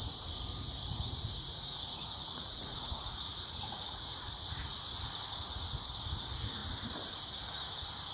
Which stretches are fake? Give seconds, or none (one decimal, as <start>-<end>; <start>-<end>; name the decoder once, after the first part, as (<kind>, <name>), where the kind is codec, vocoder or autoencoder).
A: 0.9-5.2 (vocoder, Vocos)